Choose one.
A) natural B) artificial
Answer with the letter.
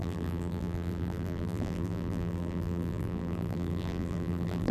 B